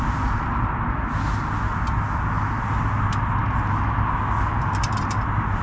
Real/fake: real